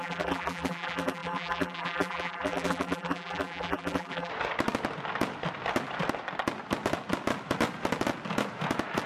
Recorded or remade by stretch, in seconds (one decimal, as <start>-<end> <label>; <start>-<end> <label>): 0.0-4.3 remade; 4.3-9.1 recorded